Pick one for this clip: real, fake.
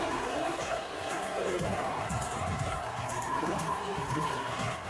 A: fake